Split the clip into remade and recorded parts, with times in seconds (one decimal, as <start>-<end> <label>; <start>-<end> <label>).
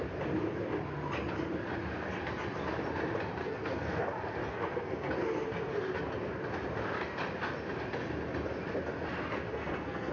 0.0-3.4 recorded; 3.4-4.0 remade; 4.0-4.5 recorded; 4.5-5.1 remade; 5.1-9.5 recorded; 9.5-10.1 remade